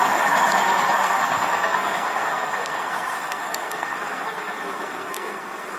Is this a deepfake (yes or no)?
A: yes